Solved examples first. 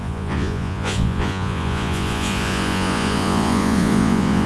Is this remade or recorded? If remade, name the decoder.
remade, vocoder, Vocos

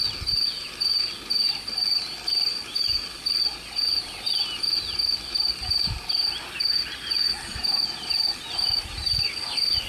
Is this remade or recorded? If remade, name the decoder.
recorded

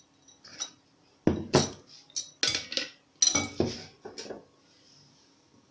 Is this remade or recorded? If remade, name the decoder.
recorded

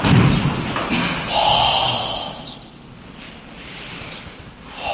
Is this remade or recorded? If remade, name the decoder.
recorded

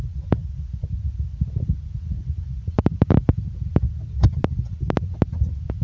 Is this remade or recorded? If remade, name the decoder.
recorded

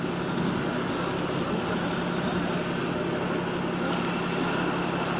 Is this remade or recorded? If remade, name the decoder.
recorded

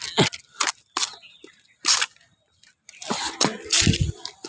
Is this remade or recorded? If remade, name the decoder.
recorded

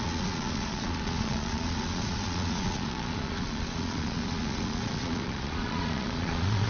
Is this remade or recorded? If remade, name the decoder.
remade, vocoder, Vocos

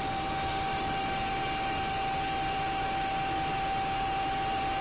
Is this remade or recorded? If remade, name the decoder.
recorded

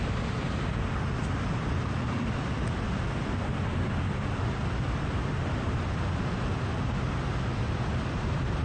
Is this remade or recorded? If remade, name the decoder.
recorded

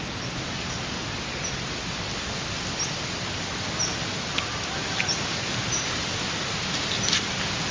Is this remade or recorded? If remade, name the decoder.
recorded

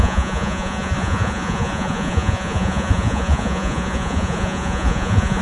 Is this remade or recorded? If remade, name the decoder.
remade, vocoder, Vocos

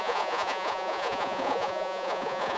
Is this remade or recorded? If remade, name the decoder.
remade, vocoder, Vocos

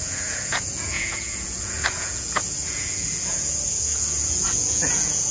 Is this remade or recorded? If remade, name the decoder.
remade, vocoder, Vocos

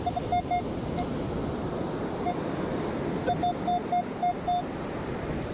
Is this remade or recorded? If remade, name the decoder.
recorded